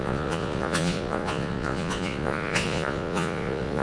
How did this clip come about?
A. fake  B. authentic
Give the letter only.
A